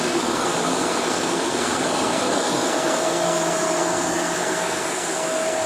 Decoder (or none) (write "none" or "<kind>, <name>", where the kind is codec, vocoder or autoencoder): codec, SNAC